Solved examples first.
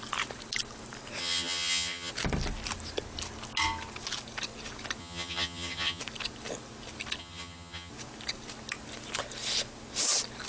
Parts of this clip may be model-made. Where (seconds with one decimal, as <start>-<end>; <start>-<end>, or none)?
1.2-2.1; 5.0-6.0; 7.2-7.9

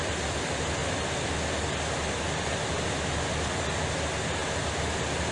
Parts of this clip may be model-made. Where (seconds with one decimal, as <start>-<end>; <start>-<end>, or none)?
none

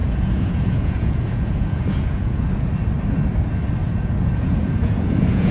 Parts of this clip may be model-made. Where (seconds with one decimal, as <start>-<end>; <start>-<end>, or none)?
0.0-2.5; 3.8-5.5

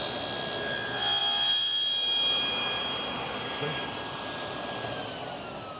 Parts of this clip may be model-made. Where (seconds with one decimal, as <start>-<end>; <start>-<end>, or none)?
none

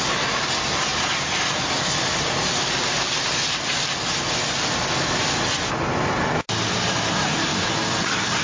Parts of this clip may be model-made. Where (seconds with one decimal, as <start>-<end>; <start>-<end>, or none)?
7.5-8.4

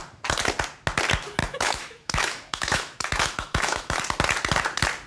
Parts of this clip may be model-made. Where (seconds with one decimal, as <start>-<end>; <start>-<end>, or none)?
1.4-4.0

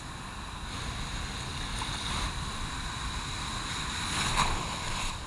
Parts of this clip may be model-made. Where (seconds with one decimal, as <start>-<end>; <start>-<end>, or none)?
none